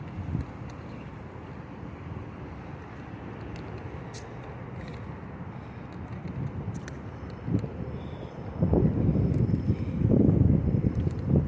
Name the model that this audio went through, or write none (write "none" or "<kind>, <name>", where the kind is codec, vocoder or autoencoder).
none